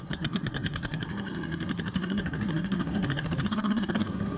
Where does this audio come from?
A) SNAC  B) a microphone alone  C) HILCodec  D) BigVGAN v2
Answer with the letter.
A